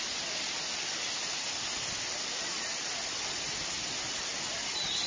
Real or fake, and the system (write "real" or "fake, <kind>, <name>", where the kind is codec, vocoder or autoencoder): real